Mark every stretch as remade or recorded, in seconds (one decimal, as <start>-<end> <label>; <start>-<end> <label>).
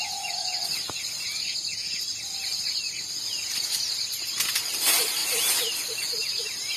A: 0.0-0.5 remade; 0.5-4.5 recorded; 4.5-5.2 remade; 5.2-5.9 recorded; 5.9-6.8 remade